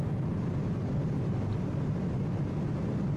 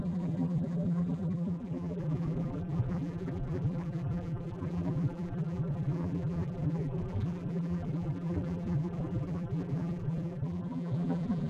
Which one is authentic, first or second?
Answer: first